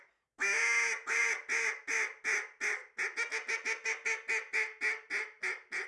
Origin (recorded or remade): recorded